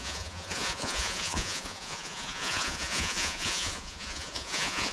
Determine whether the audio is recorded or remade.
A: remade